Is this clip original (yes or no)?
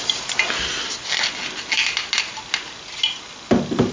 yes